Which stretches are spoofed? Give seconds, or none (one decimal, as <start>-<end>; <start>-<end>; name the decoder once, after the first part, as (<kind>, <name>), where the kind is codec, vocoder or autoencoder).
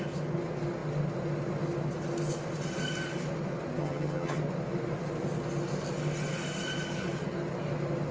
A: 3.8-4.4 (vocoder, HiFi-GAN)